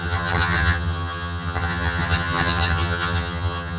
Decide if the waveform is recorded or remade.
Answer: remade